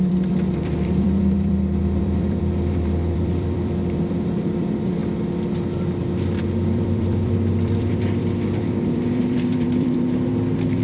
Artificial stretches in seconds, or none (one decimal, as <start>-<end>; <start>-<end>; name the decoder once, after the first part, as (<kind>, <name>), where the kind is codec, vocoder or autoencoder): 0.0-5.0 (vocoder, BigVGAN v2); 6.4-10.8